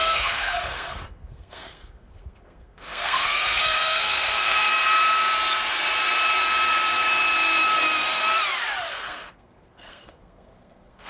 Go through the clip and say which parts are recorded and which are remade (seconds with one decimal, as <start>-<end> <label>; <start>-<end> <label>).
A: 0.0-4.7 remade; 4.7-8.9 recorded; 8.9-11.1 remade